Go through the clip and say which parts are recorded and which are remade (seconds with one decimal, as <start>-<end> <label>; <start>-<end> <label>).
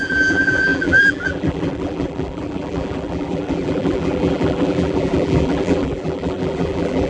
0.0-7.1 remade